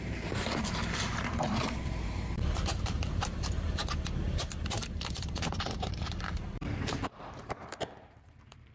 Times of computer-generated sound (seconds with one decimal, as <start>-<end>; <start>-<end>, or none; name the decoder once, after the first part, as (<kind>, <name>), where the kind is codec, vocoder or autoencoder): 0.0-3.8 (vocoder, BigVGAN v2); 5.8-8.7